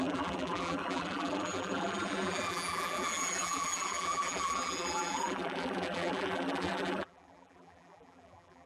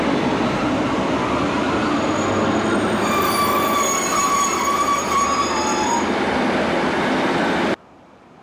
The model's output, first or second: first